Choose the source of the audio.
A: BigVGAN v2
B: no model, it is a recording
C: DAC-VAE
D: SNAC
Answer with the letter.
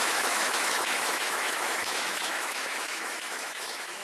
C